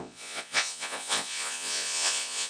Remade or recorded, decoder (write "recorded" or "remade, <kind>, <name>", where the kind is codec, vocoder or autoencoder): remade, vocoder, Vocos